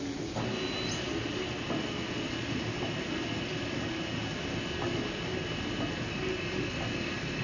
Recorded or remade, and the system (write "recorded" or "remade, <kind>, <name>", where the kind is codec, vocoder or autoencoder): recorded